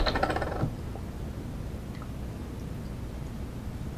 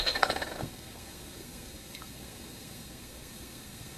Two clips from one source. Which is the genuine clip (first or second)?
first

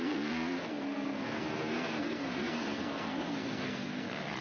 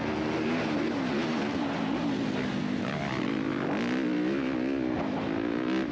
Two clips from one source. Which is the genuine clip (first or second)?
second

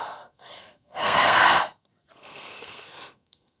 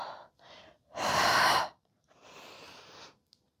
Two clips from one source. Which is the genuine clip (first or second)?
second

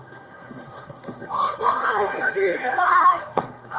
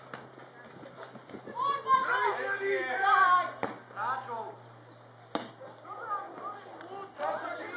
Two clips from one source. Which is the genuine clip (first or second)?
second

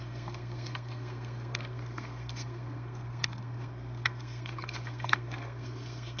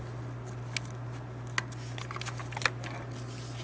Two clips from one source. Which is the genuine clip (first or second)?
second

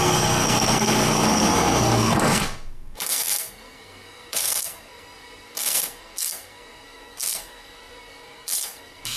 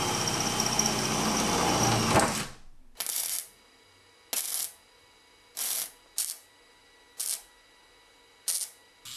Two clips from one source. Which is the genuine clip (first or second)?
second